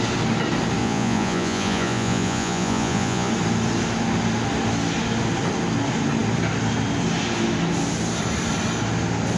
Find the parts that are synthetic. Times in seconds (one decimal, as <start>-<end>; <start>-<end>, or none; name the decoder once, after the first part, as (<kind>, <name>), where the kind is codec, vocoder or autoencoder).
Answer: 0.8-3.3 (vocoder, Vocos)